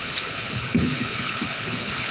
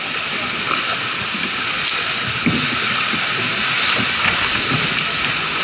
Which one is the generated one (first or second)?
first